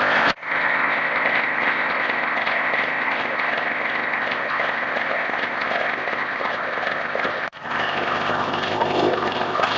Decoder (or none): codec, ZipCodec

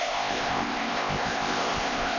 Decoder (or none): codec, ZipCodec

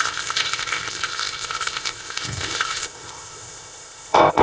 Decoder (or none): codec, ZipCodec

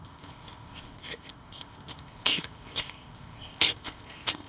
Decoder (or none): codec, ZipCodec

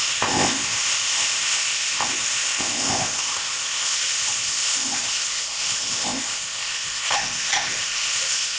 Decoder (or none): codec, ZipCodec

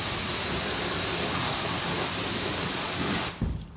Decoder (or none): none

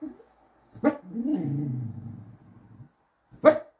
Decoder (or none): none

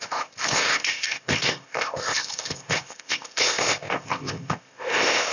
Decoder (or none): codec, ZipCodec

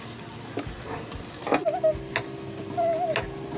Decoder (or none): none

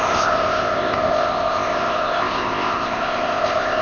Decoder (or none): codec, ZipCodec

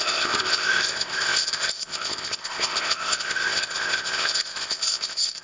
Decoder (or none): codec, ZipCodec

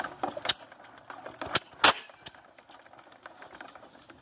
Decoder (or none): none